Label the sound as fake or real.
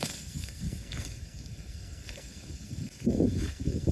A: fake